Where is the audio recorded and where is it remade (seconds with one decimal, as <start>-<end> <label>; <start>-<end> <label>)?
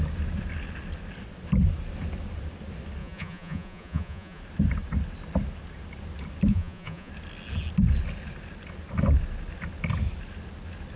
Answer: 0.0-3.0 recorded; 3.0-4.4 remade; 4.4-6.5 recorded; 6.5-7.1 remade; 7.1-11.0 recorded